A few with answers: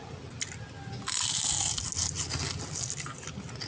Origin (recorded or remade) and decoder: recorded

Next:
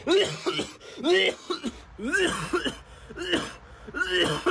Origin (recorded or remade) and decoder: recorded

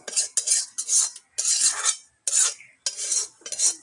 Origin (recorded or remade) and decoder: recorded